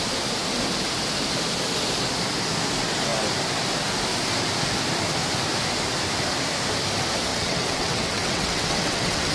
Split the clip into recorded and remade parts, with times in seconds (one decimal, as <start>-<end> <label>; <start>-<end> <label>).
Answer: 0.0-7.3 recorded; 7.3-9.3 remade